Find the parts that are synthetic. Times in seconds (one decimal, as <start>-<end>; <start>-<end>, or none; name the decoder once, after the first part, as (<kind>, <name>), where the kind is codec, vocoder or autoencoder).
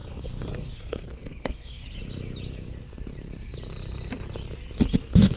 0.0-1.8 (codec, SNAC); 5.0-5.4